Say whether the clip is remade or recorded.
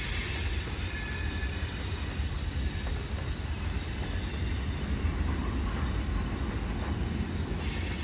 recorded